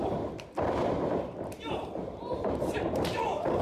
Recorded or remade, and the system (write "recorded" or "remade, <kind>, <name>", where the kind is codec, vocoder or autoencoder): remade, vocoder, BigVGAN v2